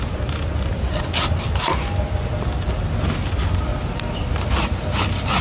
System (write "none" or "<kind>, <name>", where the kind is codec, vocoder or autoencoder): none